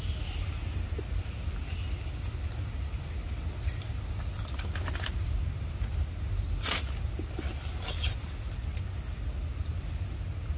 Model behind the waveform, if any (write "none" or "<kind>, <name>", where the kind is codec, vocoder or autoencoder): none